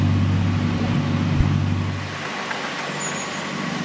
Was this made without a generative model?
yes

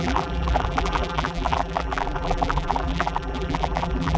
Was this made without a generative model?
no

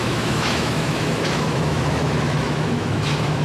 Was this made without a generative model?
no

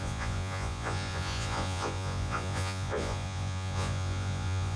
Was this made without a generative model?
no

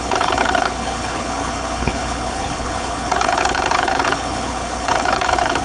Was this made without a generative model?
no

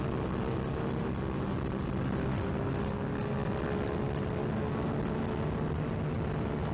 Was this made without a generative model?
yes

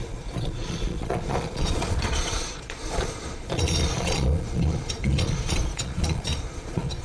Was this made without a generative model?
no